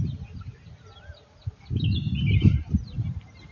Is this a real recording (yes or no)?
yes